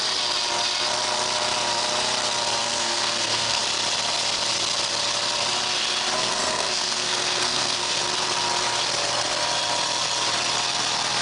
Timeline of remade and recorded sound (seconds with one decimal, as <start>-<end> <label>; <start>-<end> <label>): 0.0-2.6 recorded; 2.6-3.6 remade; 3.6-6.2 recorded; 6.2-7.9 remade; 7.9-11.2 recorded